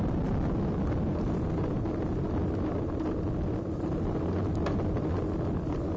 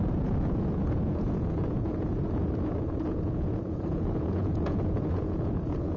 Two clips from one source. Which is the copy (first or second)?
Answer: second